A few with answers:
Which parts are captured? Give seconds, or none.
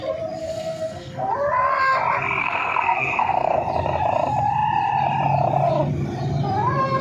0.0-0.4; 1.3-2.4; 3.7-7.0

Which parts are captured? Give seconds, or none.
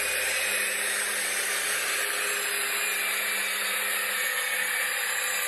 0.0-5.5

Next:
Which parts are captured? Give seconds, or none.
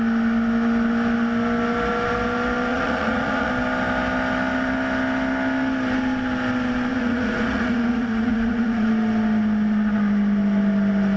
0.0-2.7; 3.5-6.9; 8.9-11.2